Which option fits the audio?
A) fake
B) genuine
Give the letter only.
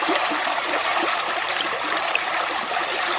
A